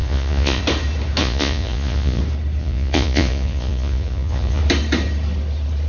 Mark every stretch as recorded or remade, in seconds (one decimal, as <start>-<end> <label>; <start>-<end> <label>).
0.0-0.6 remade; 0.6-1.2 recorded; 1.2-2.2 remade; 2.2-2.6 recorded; 2.6-4.6 remade; 4.6-5.9 recorded